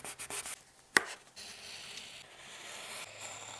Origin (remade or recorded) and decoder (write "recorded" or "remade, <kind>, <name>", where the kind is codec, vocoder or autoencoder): recorded